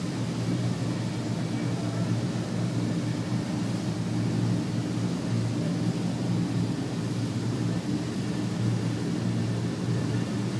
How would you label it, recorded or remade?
recorded